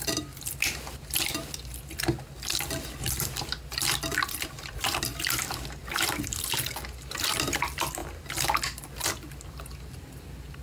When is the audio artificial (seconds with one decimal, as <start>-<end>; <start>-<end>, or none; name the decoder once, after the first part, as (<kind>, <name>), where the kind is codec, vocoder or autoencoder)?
none